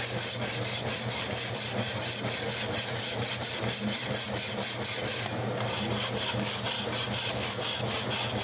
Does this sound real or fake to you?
real